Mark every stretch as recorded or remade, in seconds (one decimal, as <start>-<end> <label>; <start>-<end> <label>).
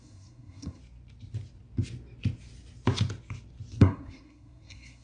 0.0-0.8 remade; 0.8-3.8 recorded; 3.8-5.0 remade